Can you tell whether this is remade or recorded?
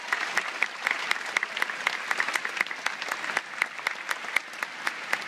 recorded